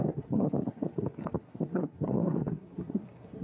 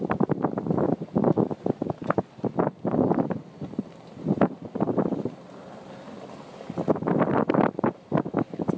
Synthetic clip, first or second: first